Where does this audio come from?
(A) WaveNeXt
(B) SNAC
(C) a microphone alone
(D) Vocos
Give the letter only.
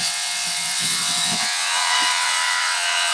A